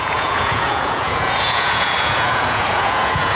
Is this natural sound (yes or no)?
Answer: no